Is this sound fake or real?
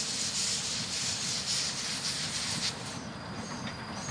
real